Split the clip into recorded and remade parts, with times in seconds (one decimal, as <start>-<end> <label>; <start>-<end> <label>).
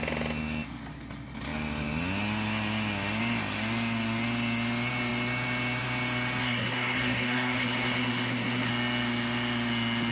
0.0-6.4 recorded; 6.4-8.7 remade; 8.7-10.1 recorded